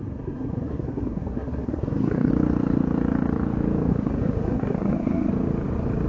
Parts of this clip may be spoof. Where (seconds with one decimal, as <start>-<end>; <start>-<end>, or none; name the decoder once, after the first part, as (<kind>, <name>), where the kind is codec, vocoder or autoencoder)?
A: 0.0-2.3 (codec, SNAC); 3.9-5.3